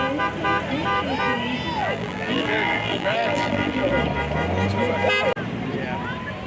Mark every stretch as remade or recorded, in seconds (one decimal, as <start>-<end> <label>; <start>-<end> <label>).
0.0-1.8 recorded; 1.8-3.9 remade; 3.9-6.5 recorded